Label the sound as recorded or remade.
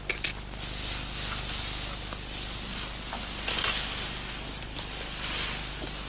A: recorded